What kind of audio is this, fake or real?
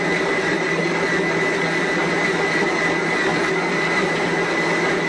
real